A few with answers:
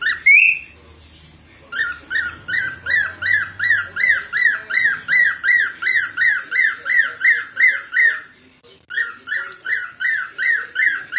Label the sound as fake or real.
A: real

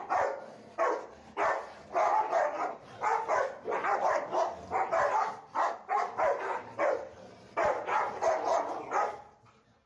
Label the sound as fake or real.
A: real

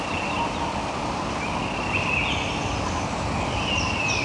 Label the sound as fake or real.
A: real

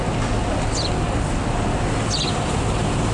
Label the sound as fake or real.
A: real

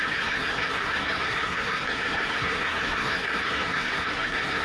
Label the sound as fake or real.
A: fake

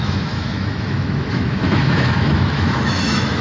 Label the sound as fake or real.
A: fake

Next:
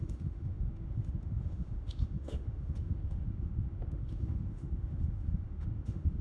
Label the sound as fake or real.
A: fake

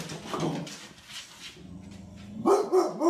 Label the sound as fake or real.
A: real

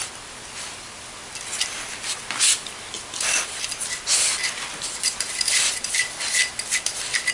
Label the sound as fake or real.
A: real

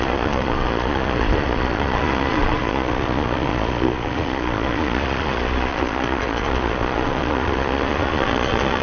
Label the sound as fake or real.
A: fake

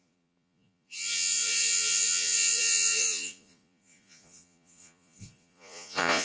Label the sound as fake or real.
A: fake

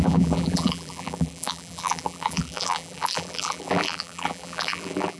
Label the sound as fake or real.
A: fake